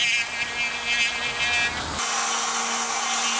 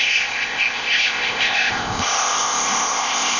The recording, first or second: first